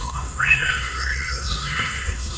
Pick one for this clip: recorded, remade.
remade